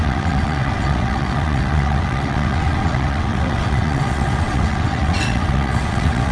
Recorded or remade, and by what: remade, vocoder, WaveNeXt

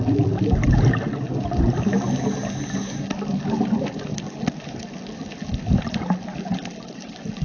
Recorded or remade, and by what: recorded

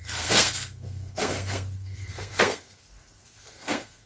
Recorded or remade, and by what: remade, codec, SNAC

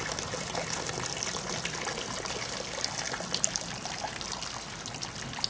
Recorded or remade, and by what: recorded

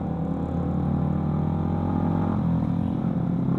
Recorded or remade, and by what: recorded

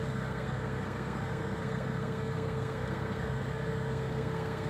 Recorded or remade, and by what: remade, codec, SNAC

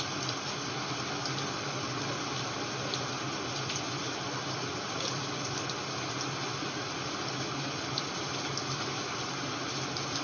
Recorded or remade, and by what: recorded